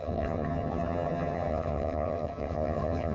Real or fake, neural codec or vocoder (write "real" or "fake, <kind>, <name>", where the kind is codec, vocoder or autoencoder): fake, vocoder, HiFi-GAN